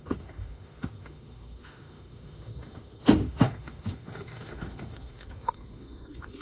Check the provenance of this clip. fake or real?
fake